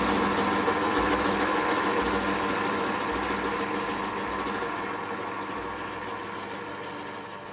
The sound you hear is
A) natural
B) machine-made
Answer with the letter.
A